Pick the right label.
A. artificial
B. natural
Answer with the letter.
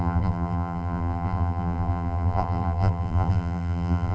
A